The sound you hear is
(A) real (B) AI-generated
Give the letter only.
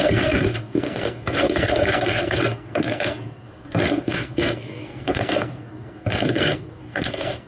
B